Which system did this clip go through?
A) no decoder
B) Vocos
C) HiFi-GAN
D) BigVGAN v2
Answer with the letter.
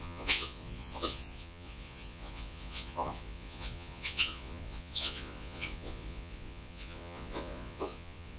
B